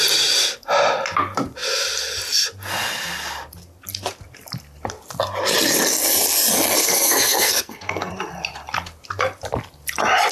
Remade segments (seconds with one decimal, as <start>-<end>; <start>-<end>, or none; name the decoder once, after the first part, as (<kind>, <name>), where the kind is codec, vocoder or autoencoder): 6.8-8.1 (codec, SNAC)